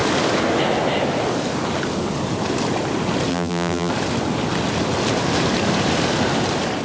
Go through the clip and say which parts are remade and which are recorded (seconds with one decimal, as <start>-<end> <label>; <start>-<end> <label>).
0.0-3.3 recorded; 3.3-3.9 remade; 3.9-6.8 recorded